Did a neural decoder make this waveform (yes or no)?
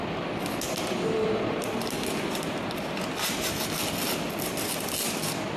no